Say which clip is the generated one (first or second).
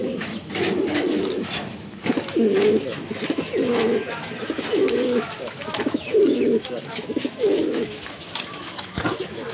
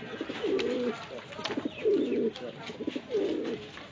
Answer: first